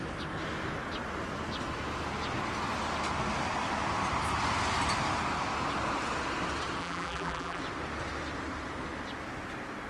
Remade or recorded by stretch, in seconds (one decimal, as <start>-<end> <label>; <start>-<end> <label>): 0.0-6.8 recorded; 6.8-7.6 remade; 7.6-9.9 recorded